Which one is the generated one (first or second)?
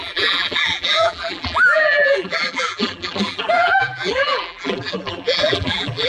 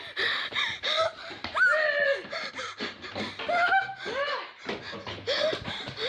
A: first